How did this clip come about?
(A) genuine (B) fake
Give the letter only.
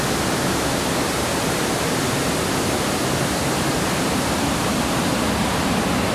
A